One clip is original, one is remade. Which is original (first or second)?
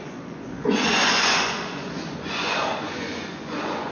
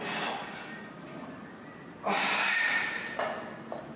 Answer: second